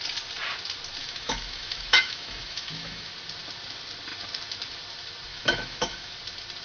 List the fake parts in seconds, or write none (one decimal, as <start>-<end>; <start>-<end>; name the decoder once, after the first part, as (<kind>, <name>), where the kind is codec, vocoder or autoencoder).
1.0-3.1 (autoencoder, DAC-VAE); 5.3-6.1

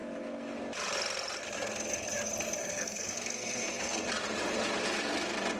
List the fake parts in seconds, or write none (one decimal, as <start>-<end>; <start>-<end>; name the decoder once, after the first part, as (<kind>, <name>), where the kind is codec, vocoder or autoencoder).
0.0-0.6 (codec, SNAC); 2.6-4.0